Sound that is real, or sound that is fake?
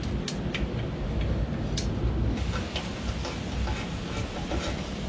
real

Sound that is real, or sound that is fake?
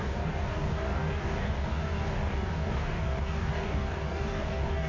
fake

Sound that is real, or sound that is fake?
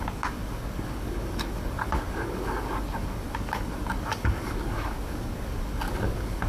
fake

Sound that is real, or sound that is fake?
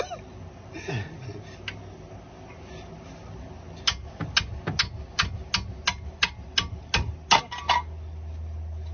real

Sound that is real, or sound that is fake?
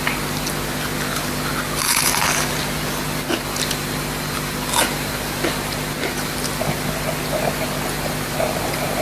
real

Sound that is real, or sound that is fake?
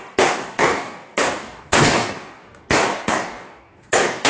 fake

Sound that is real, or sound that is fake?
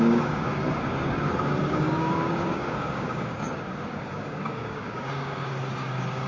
fake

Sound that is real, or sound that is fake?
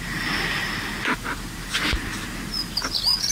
real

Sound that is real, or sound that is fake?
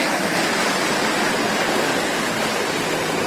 real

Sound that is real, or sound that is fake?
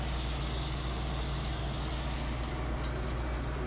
real